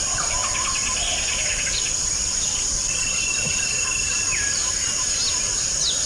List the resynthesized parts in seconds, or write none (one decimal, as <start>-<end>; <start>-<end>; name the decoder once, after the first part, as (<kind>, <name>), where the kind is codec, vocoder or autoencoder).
0.0-0.4 (vocoder, BigVGAN v2); 2.5-6.1